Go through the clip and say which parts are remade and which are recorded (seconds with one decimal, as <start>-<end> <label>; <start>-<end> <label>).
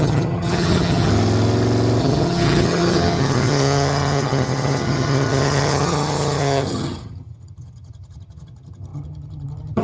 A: 0.0-1.1 remade; 1.1-2.0 recorded; 2.0-9.8 remade